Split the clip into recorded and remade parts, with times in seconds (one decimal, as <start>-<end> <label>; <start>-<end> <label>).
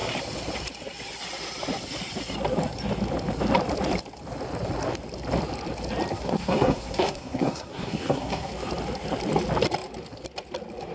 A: 0.0-6.1 recorded; 6.1-8.5 remade; 8.5-10.9 recorded